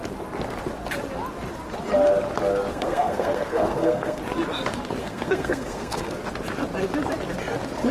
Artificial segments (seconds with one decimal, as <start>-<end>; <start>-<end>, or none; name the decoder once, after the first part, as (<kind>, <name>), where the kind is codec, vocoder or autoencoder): 2.7-4.2 (codec, SNAC); 5.0-6.1